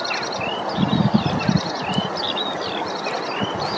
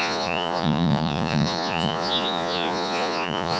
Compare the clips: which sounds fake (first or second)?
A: second